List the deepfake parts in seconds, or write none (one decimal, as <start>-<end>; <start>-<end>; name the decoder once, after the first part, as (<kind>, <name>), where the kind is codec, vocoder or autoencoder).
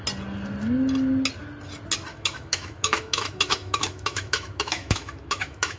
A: 2.1-5.8 (autoencoder, DAC-VAE)